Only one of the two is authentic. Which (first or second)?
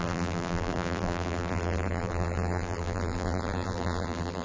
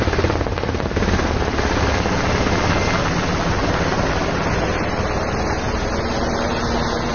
second